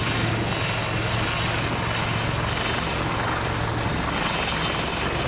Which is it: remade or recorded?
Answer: recorded